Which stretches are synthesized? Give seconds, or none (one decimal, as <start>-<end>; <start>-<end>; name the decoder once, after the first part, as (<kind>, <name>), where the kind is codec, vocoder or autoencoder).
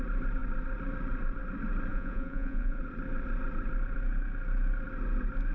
1.9-2.8 (vocoder, Vocos)